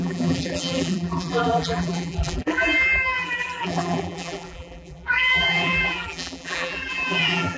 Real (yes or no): no